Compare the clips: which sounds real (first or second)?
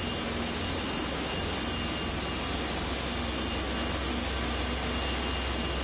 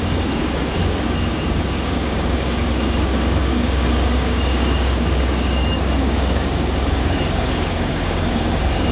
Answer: first